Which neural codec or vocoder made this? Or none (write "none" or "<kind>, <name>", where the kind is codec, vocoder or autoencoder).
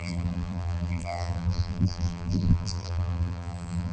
vocoder, BigVGAN v2